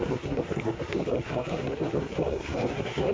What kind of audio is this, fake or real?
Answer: fake